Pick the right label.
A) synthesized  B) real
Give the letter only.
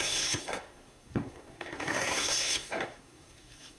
A